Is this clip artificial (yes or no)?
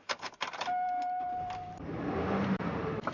yes